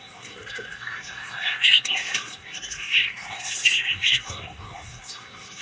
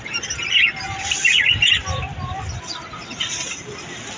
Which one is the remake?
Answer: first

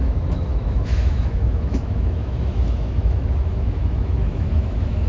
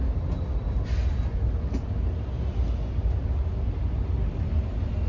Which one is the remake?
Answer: first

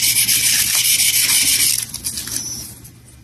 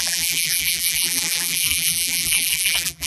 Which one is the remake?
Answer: second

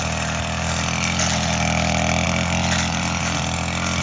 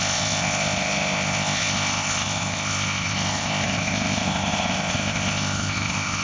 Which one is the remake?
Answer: second